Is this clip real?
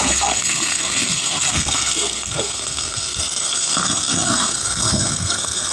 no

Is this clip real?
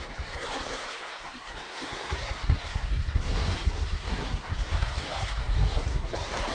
no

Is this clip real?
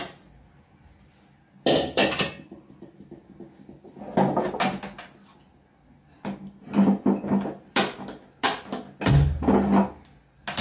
yes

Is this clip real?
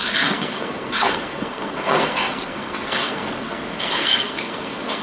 no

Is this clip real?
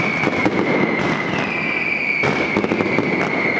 yes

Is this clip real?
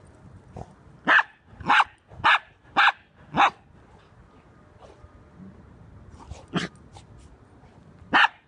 yes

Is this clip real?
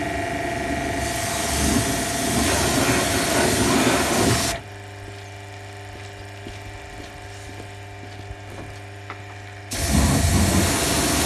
yes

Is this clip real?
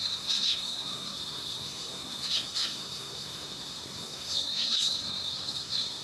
no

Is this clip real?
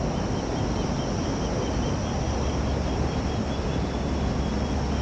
yes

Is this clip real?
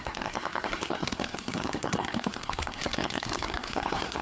no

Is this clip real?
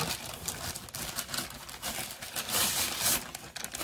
yes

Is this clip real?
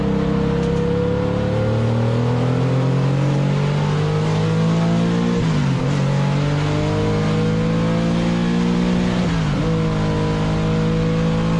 yes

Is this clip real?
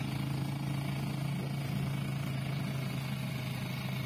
yes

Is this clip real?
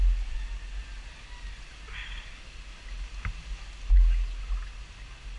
yes